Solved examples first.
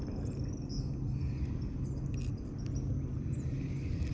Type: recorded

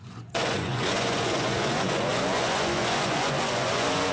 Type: remade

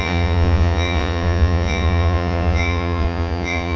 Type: remade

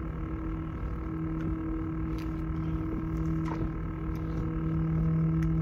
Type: recorded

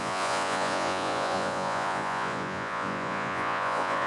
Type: remade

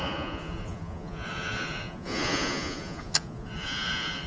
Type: remade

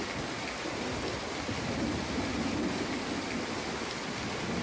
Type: recorded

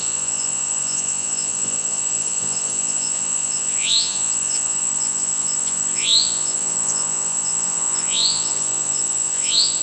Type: remade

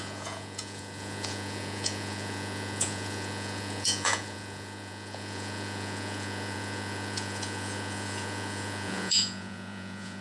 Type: remade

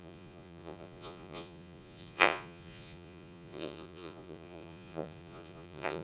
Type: remade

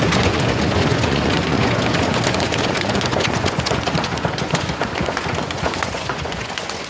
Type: remade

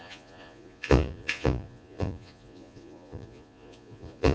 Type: remade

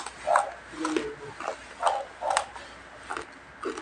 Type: recorded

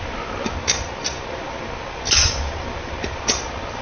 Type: recorded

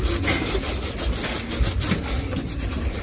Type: recorded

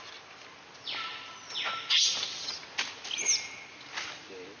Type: recorded